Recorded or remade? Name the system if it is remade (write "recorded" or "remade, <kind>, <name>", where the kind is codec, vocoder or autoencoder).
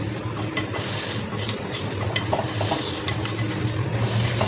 recorded